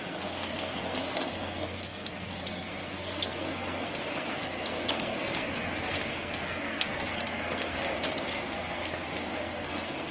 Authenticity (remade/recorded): remade